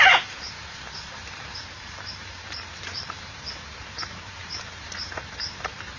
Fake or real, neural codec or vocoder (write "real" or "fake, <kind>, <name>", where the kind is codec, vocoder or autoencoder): fake, vocoder, BigVGAN v2